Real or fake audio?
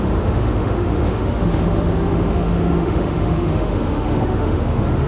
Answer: fake